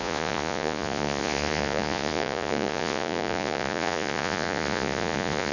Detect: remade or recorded remade